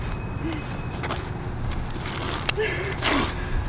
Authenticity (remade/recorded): recorded